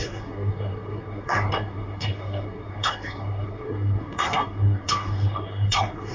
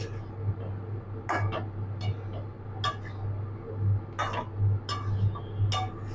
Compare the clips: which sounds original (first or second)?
second